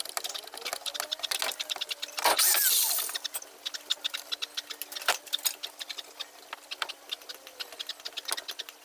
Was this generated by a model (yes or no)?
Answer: no